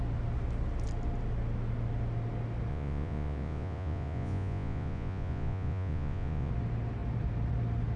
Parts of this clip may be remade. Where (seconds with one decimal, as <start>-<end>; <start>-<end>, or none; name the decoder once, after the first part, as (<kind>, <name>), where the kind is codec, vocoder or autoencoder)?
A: 2.7-6.5 (vocoder, Vocos)